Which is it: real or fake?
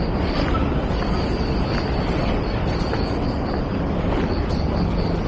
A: real